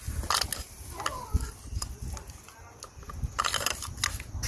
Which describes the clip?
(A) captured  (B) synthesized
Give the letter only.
A